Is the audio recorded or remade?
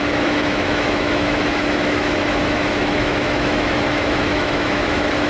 remade